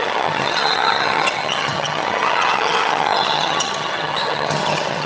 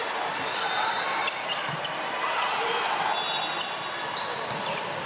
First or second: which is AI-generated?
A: first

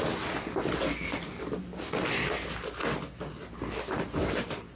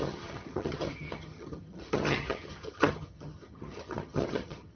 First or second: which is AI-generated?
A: second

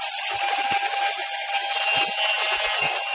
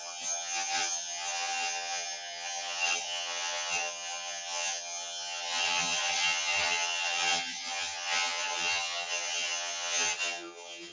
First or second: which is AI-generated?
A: second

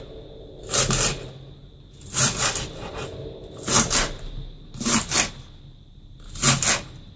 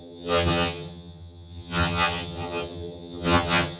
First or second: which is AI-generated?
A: second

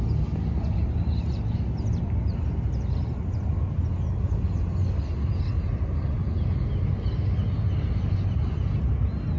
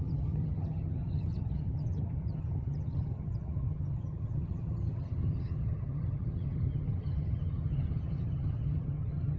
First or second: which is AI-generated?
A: second